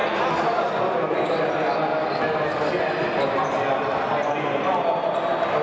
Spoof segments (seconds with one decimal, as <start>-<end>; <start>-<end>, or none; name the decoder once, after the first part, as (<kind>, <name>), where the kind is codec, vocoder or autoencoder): none